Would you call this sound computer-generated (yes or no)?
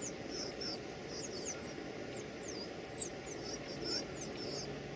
no